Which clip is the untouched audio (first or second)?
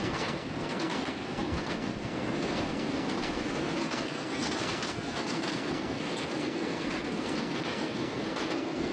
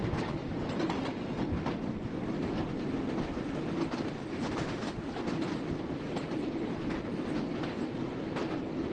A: second